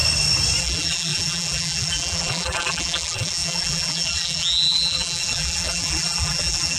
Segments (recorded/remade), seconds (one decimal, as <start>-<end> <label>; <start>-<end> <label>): 0.0-0.6 recorded; 0.6-6.8 remade